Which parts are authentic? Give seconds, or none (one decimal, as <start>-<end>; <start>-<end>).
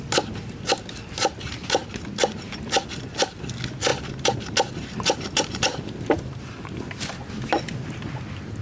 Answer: 0.0-8.6